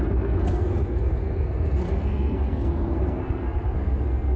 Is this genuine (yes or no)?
no